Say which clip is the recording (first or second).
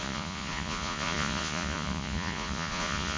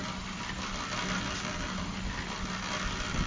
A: second